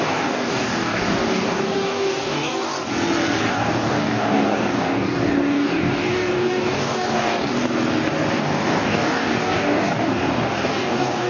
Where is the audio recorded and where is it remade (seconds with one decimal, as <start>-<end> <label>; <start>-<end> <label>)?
0.0-2.7 remade; 2.7-3.5 recorded; 3.5-7.4 remade; 7.4-8.3 recorded; 8.3-11.3 remade